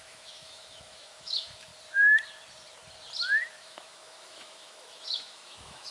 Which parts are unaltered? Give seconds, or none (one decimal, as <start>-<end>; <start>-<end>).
1.7-3.5